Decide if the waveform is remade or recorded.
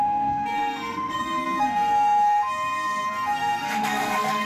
remade